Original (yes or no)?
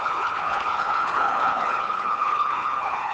no